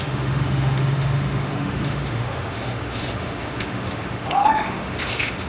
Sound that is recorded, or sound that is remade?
remade